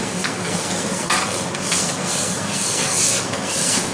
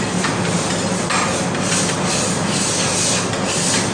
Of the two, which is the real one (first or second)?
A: second